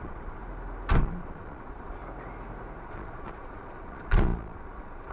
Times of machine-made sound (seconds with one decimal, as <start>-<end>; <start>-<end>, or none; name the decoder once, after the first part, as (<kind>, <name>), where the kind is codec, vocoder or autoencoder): 0.0-0.4 (vocoder, Vocos); 1.0-2.0; 2.8-5.1

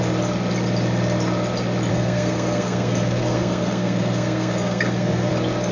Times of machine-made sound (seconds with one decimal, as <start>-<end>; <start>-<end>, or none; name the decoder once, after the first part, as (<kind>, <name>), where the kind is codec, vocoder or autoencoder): 1.9-5.3 (codec, SNAC)

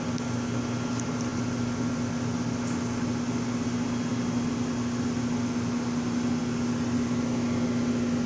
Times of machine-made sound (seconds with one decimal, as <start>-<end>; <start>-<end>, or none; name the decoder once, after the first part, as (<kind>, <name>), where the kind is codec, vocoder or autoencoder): 1.3-2.1 (vocoder, BigVGAN v2)

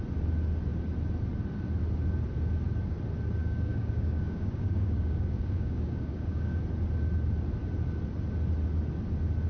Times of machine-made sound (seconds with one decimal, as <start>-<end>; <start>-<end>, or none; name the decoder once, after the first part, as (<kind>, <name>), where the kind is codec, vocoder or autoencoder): 3.4-6.6 (codec, DAC)

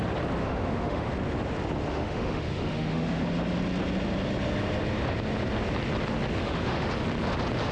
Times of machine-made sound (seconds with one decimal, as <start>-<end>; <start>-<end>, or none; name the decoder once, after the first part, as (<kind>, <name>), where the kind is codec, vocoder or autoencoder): 0.4-1.1 (autoencoder, DAC-VAE); 1.9-3.2; 6.4-6.9

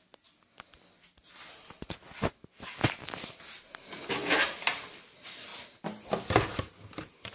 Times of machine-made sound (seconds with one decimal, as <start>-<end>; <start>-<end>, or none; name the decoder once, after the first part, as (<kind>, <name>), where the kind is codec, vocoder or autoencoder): none

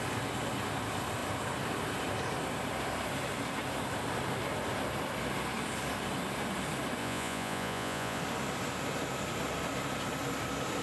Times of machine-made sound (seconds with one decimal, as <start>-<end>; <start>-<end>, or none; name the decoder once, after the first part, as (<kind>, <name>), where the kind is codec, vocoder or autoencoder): 7.0-8.2 (vocoder, Vocos)